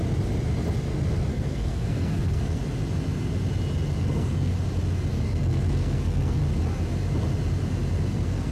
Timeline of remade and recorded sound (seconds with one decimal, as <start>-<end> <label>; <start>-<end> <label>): 0.0-1.3 recorded; 1.3-2.6 remade; 2.6-4.0 recorded; 4.0-4.5 remade; 4.5-5.1 recorded; 5.1-6.4 remade; 6.4-8.1 recorded; 8.1-8.5 remade